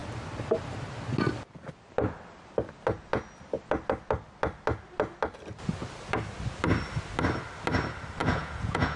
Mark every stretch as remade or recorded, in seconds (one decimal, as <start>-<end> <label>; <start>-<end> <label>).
0.0-8.2 recorded; 8.2-9.0 remade